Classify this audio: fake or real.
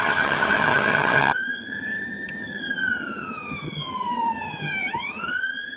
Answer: fake